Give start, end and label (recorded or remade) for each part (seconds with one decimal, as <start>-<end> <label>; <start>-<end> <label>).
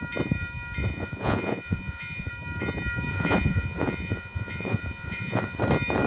0.0-0.8 recorded; 0.8-2.3 remade; 2.3-3.1 recorded; 3.1-5.6 remade; 5.6-6.1 recorded